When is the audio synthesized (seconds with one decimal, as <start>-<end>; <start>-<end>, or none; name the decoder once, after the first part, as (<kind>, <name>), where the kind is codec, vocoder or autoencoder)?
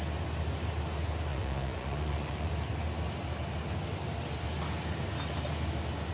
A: 1.3-2.5 (vocoder, Vocos)